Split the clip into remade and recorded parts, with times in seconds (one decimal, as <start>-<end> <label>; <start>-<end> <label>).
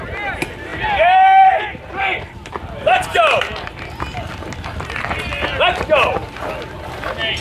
0.0-7.4 recorded